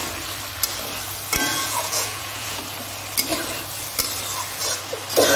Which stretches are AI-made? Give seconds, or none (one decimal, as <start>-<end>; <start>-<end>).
1.5-2.6